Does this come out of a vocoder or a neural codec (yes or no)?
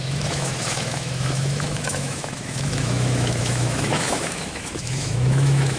yes